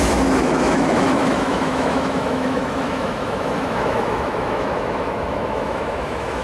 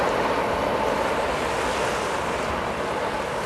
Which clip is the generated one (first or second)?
first